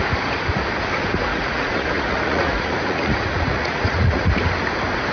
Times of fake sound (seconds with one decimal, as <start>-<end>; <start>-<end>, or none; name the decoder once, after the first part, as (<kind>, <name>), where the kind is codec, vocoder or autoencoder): 1.3-4.4 (vocoder, Vocos)

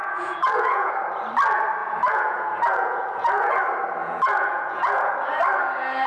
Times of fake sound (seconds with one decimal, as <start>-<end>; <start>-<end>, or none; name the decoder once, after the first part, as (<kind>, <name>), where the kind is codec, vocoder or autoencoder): 0.0-0.9 (vocoder, Vocos); 1.8-3.5; 4.0-5.1